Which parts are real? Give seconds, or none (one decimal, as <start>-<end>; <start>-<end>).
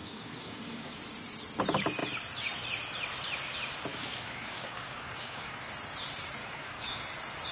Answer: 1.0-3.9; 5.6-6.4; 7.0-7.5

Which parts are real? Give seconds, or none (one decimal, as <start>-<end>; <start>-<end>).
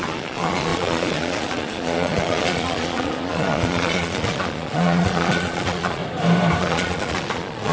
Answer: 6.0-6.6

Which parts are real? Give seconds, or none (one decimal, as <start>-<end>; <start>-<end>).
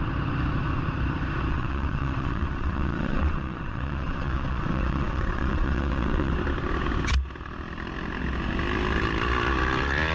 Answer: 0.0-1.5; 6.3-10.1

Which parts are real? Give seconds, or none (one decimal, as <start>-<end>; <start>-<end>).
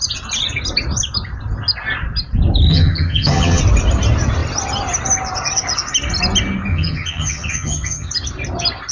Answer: 0.0-2.7; 3.6-6.7; 8.1-8.9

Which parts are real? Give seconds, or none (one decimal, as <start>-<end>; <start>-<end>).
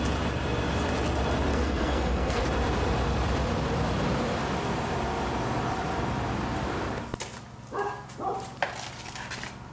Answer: 0.0-1.5; 2.4-9.7